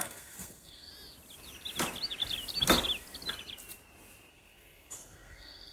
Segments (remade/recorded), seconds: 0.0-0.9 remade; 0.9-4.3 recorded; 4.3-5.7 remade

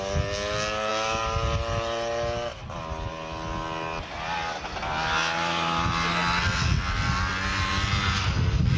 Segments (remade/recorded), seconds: 0.0-8.8 recorded

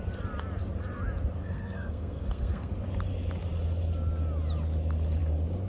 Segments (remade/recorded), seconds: 0.0-1.4 recorded; 1.4-2.7 remade; 2.7-5.7 recorded

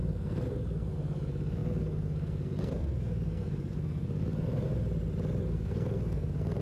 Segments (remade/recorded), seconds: 0.0-4.7 remade; 4.7-5.4 recorded; 5.4-6.6 remade

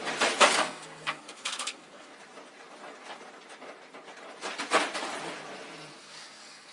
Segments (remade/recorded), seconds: 0.0-0.6 recorded; 0.6-2.1 remade; 2.1-6.0 recorded; 6.0-6.7 remade

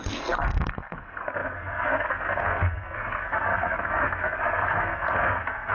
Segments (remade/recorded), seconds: 0.0-5.7 remade